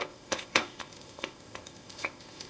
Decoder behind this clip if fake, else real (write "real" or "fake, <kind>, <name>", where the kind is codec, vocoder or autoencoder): fake, codec, ZipCodec